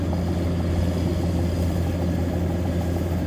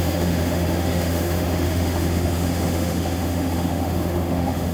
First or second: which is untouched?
first